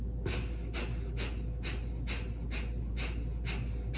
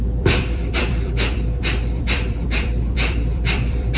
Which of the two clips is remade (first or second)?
second